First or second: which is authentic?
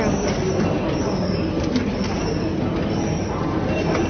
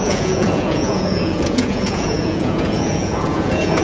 first